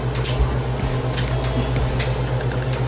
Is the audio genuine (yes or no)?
yes